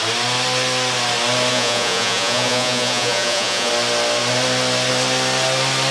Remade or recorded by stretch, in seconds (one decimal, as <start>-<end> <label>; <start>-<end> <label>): 0.0-1.5 recorded; 1.5-3.7 remade; 3.7-5.9 recorded